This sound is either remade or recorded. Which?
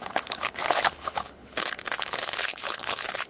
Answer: remade